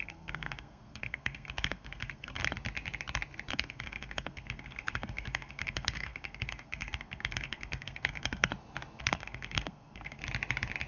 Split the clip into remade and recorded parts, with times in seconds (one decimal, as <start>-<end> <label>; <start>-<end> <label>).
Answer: 0.0-2.4 remade; 2.4-3.5 recorded; 3.5-8.5 remade; 8.5-9.0 recorded; 9.0-10.2 remade; 10.2-10.9 recorded